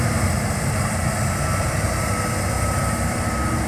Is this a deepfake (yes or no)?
yes